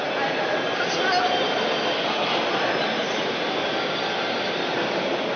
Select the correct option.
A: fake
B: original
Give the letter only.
B